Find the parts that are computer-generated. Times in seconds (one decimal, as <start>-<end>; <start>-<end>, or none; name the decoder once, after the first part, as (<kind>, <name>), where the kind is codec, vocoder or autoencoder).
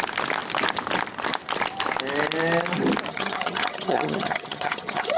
3.1-5.2 (vocoder, HiFi-GAN)